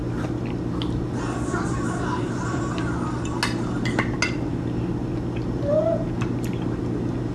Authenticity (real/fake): real